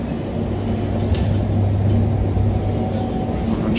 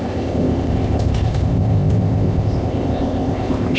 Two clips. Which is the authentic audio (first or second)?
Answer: first